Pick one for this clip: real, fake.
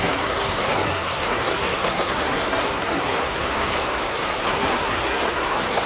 fake